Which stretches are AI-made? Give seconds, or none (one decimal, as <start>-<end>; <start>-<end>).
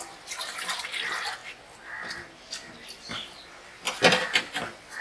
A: 1.4-4.4